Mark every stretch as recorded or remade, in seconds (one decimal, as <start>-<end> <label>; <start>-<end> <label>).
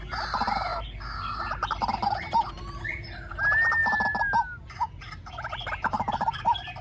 0.0-6.8 recorded